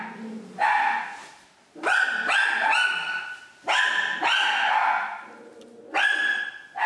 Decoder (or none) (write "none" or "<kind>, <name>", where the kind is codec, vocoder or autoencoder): none